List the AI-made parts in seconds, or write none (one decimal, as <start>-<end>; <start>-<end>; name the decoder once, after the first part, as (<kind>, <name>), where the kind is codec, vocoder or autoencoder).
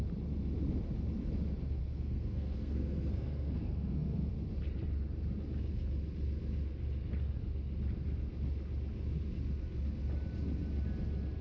1.8-4.3 (codec, SNAC)